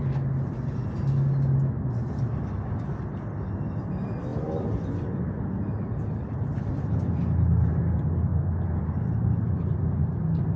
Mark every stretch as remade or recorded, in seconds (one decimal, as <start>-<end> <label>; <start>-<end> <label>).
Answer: 0.0-10.6 recorded